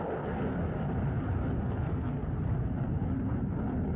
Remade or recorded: recorded